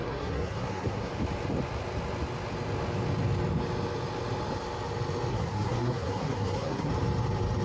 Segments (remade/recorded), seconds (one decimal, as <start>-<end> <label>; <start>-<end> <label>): 0.0-1.1 remade; 1.1-5.3 recorded; 5.3-6.9 remade; 6.9-7.6 recorded